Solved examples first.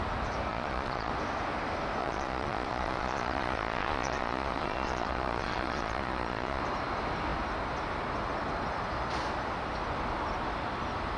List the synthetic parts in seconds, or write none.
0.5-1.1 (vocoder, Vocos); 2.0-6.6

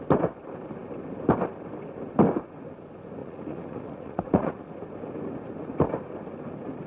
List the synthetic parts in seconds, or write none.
3.2-4.7 (vocoder, Vocos)